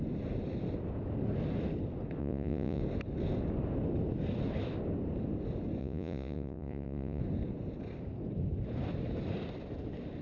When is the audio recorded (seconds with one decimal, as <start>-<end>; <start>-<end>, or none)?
0.0-2.2; 2.8-5.8; 7.2-10.2